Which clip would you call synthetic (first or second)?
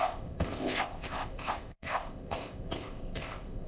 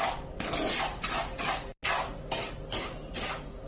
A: first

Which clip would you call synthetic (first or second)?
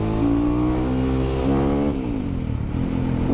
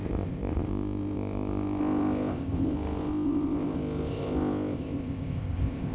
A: second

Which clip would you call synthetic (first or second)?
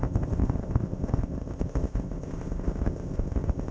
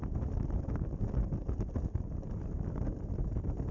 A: first